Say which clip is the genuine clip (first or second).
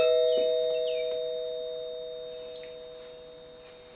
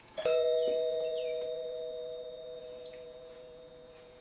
first